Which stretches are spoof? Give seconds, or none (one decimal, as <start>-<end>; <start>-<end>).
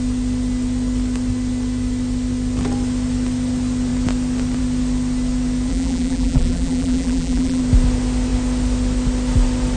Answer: 5.7-7.6